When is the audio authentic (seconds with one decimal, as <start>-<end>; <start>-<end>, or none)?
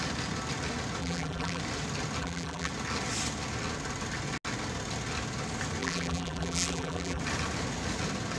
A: 0.0-1.0; 1.6-2.2; 2.7-5.8; 7.2-8.4